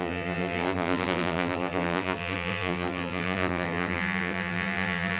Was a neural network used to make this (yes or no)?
yes